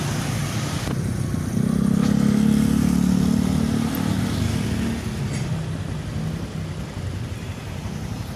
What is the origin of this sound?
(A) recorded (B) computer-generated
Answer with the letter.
A